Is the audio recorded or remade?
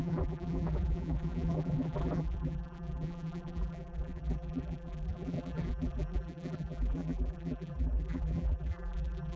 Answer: remade